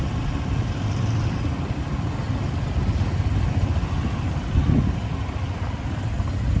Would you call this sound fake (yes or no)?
no